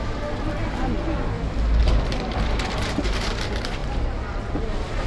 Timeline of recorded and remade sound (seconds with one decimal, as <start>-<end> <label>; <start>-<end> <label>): 0.0-0.6 remade; 0.6-1.8 recorded; 1.8-3.8 remade; 3.8-5.1 recorded